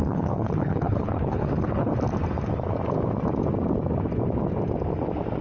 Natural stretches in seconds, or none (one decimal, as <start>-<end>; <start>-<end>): 1.9-5.4